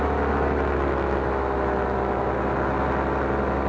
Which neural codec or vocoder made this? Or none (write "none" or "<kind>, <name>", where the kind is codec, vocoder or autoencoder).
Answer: none